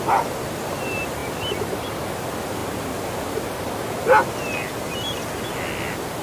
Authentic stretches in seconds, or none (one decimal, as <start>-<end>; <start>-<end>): 0.0-6.2